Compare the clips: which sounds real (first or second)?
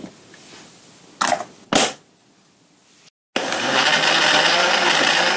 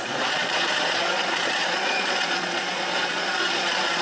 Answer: first